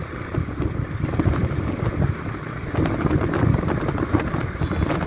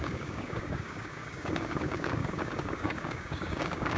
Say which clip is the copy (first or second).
second